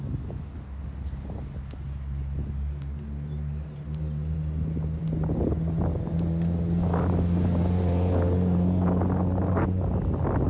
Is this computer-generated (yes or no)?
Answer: no